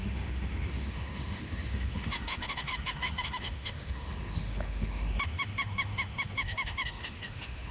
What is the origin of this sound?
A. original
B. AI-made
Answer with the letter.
B